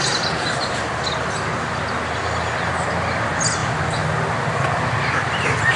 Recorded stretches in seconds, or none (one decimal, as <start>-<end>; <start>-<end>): 0.0-5.8